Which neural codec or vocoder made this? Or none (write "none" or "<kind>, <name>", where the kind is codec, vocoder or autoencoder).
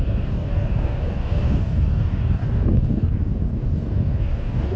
codec, DAC